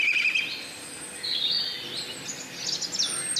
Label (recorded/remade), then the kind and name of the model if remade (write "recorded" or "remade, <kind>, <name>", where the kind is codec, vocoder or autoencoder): recorded